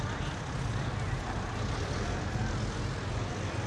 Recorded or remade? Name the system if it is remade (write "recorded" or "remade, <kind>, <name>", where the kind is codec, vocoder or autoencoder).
recorded